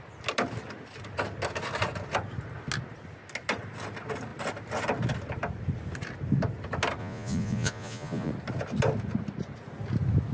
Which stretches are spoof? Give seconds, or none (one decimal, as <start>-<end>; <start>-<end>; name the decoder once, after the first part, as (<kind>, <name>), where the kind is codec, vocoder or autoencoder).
7.0-8.3 (vocoder, Vocos)